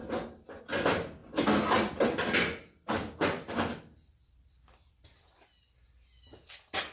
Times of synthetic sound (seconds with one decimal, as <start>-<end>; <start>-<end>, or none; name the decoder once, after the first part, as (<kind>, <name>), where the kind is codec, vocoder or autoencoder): 1.2-5.3 (vocoder, BigVGAN v2)